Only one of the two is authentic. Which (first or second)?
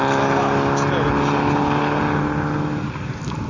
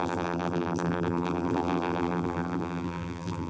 first